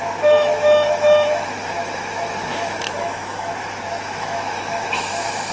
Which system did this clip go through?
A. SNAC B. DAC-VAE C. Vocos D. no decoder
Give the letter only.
B